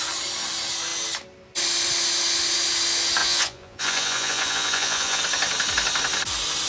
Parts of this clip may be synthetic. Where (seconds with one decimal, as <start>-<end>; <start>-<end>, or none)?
3.2-5.2